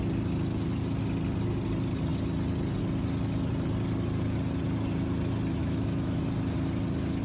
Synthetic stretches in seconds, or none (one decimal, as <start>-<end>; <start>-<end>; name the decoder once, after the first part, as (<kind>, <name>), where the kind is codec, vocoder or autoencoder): 5.6-6.2 (autoencoder, DAC-VAE)